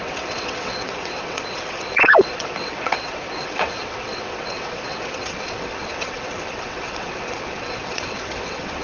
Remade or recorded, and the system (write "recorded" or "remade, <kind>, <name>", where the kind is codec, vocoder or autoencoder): remade, vocoder, WaveNeXt